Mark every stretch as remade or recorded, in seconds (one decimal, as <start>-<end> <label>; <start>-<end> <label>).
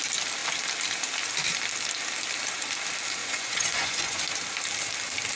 0.0-3.2 recorded; 3.2-4.2 remade; 4.2-5.4 recorded